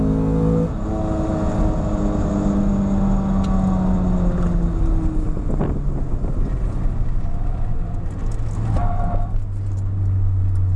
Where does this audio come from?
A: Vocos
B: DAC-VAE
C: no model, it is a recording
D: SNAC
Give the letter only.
C